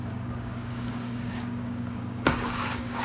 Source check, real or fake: fake